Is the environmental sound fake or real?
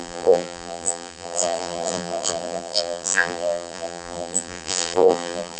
fake